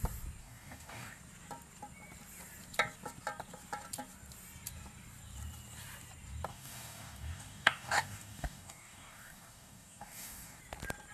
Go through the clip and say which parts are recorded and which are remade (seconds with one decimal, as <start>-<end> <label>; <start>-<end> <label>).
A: 0.0-0.4 recorded; 0.4-1.2 remade; 1.2-6.5 recorded; 6.5-10.6 remade; 10.6-11.1 recorded